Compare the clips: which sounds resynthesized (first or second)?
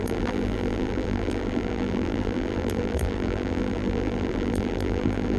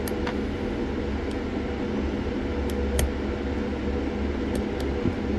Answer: first